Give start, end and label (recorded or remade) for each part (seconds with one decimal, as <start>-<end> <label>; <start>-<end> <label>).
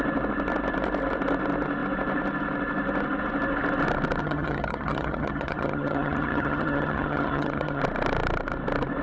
0.0-4.2 recorded; 4.2-7.8 remade; 7.8-9.0 recorded